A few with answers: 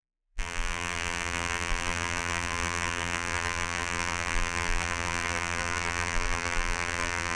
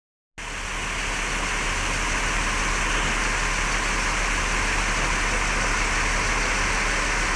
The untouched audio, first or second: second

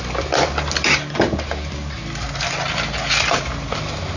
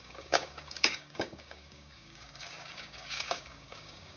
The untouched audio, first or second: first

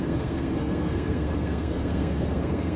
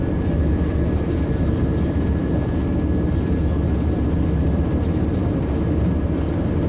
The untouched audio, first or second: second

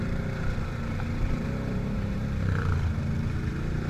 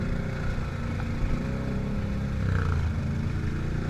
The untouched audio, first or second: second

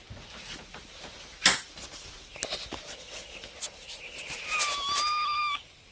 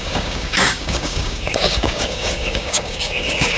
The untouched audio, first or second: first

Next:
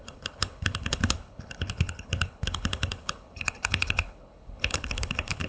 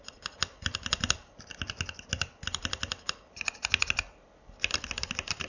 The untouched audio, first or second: second